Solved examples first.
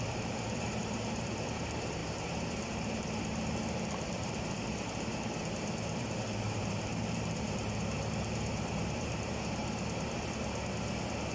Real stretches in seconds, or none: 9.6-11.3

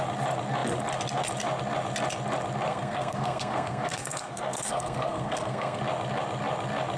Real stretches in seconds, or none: 0.0-2.7; 5.8-7.0

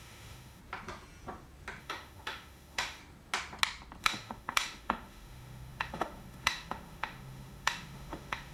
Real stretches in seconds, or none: 0.6-1.8; 3.0-4.0

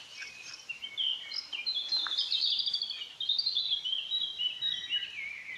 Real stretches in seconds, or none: 0.0-5.6

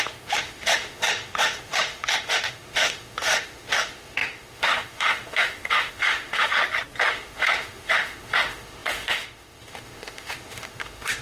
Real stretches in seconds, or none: 6.6-7.1

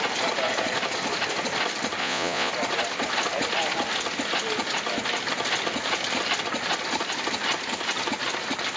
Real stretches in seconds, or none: 0.0-2.0; 2.5-8.8